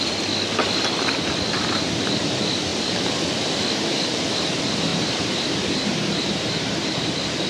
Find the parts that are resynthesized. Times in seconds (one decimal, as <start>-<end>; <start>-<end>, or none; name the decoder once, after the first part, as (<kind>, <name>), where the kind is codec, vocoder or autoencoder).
4.9-7.0 (vocoder, BigVGAN v2)